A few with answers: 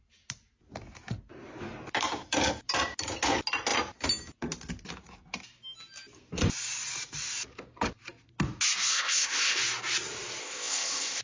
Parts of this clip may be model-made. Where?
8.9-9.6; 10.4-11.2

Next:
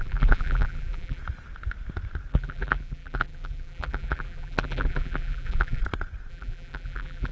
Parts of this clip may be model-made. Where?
0.0-1.2; 2.3-5.8; 6.3-7.3